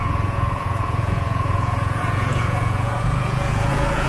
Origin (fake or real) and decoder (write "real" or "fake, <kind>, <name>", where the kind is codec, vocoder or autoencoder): fake, vocoder, Vocos